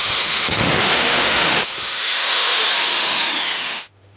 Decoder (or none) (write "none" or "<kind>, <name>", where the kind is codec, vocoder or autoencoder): autoencoder, DAC-VAE